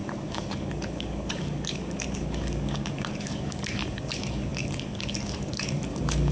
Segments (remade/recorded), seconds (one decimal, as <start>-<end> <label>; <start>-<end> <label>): 0.0-6.3 remade